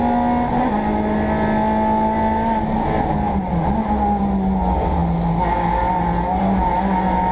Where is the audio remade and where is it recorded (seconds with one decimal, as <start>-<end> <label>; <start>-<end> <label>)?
0.0-7.3 recorded